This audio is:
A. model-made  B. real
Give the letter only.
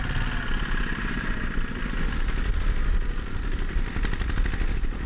B